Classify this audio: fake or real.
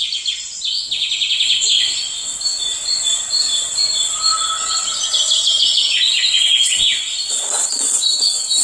real